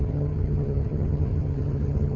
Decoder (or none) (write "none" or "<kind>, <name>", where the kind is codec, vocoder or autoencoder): vocoder, HiFi-GAN